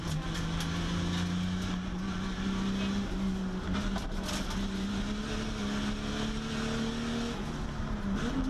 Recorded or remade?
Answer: recorded